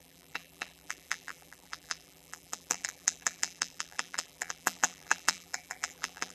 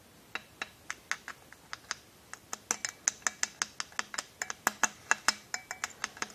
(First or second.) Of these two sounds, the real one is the second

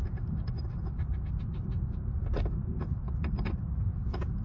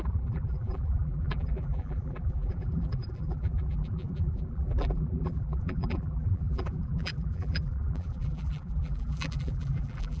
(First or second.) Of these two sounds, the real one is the first